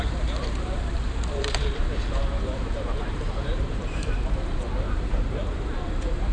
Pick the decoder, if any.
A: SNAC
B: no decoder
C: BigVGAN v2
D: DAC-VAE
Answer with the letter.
C